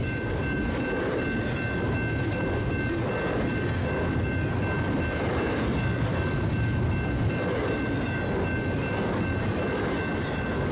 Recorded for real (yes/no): yes